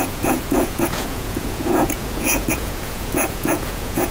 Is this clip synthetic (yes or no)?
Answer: yes